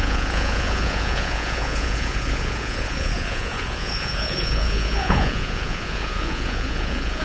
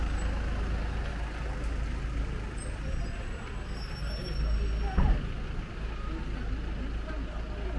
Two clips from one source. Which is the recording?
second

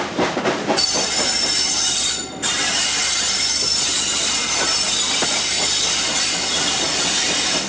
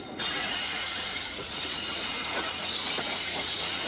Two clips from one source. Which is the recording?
first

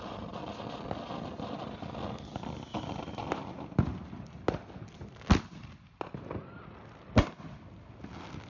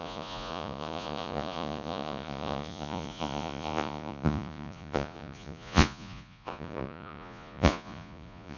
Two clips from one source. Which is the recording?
first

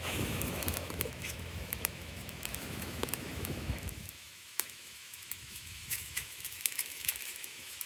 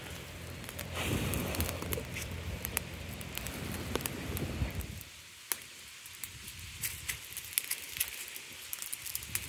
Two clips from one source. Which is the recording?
second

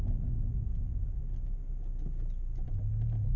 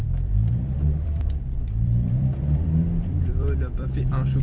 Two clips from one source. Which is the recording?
first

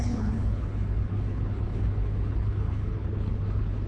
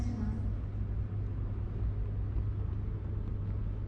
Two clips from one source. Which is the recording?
second